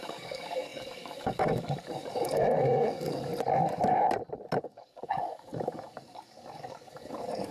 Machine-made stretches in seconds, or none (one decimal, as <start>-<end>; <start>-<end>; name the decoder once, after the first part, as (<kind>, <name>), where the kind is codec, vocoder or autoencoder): 0.0-3.3 (codec, DAC); 4.6-7.5